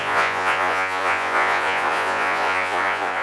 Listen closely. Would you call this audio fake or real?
fake